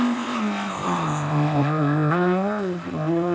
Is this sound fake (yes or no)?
yes